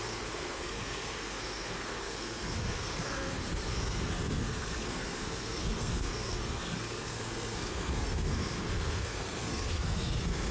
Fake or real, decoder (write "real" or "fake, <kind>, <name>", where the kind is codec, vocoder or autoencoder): fake, codec, SNAC